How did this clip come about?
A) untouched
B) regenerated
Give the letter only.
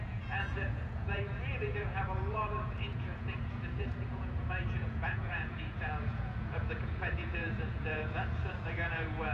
B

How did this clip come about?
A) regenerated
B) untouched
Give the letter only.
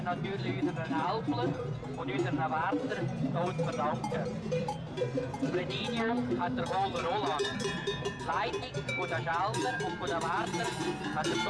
A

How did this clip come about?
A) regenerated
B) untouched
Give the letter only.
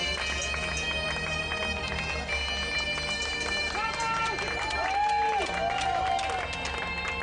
B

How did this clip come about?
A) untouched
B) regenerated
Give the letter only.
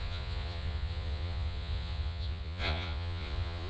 B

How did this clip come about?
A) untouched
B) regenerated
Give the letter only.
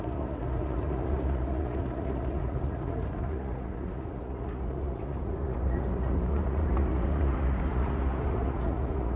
B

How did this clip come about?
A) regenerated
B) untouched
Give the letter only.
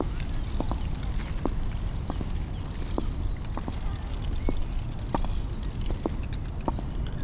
B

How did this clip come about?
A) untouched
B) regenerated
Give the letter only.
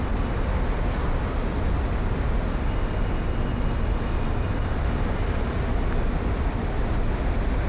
A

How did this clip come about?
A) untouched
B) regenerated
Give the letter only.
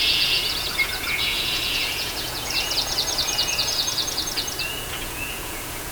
B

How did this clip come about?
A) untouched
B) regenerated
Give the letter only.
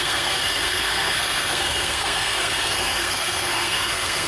B